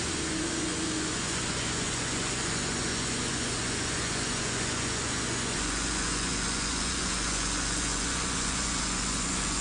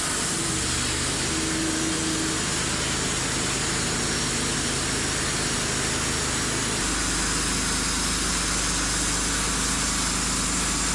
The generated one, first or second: first